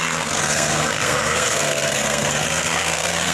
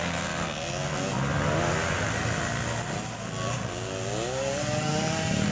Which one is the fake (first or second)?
first